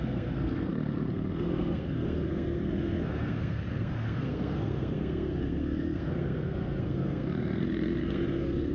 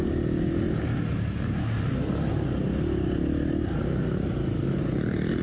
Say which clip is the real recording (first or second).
second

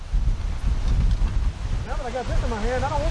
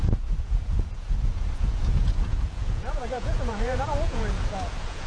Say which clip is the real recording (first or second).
first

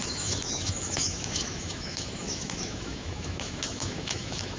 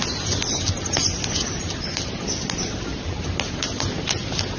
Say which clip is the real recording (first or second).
second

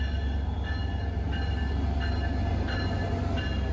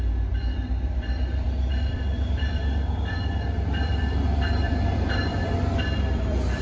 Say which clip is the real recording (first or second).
first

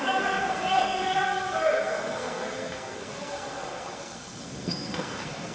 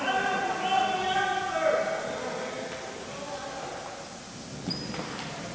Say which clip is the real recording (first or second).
second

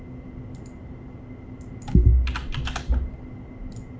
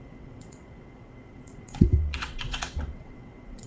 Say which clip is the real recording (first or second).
first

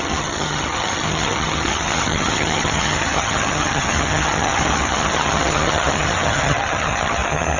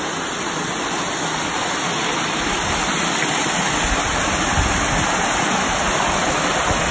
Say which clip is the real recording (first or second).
second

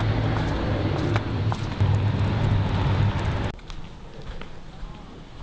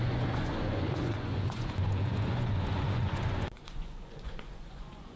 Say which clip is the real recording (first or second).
first